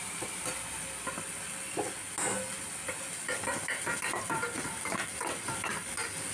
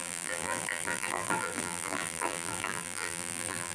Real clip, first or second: first